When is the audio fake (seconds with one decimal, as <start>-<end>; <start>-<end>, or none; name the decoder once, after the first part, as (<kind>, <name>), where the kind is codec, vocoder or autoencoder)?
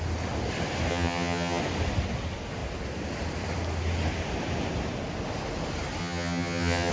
0.9-1.6 (vocoder, HiFi-GAN); 6.0-6.9